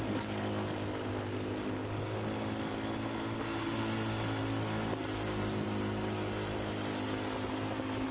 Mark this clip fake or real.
real